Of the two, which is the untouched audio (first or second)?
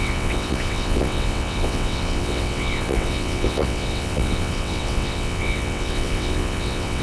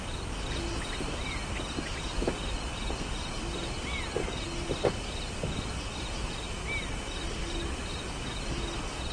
second